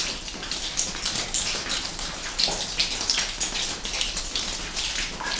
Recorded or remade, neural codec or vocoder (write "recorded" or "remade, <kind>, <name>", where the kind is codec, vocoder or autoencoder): recorded